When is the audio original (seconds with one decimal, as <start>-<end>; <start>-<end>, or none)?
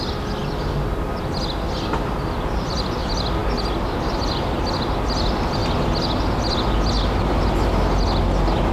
0.0-8.7